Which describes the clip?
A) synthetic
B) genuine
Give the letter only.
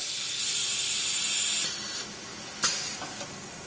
B